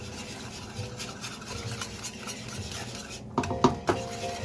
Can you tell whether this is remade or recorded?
recorded